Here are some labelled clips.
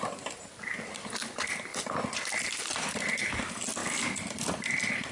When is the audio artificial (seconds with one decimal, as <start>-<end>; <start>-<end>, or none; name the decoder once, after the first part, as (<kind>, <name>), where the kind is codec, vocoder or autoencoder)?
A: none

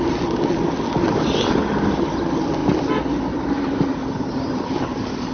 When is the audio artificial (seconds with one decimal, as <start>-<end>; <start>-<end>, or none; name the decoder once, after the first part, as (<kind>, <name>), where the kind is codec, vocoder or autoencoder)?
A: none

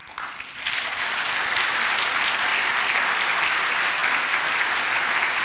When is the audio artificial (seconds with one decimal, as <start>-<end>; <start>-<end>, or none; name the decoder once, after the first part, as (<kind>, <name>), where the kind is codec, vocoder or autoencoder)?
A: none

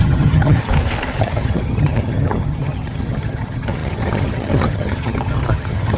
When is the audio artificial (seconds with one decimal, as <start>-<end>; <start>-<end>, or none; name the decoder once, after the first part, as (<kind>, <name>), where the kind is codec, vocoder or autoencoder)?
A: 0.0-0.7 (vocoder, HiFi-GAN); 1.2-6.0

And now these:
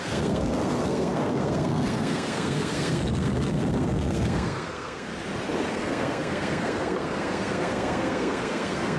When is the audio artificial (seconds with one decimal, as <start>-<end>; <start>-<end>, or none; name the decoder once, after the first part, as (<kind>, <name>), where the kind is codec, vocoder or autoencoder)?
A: 0.0-5.1 (codec, SNAC); 5.7-9.0